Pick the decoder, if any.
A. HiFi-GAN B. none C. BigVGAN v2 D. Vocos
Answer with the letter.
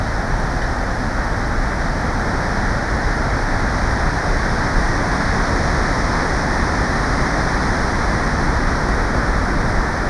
B